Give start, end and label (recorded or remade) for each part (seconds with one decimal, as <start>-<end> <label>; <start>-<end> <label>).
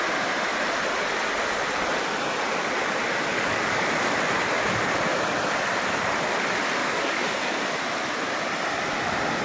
0.0-3.3 recorded; 3.3-4.1 remade; 4.1-6.8 recorded; 6.8-7.6 remade; 7.6-9.4 recorded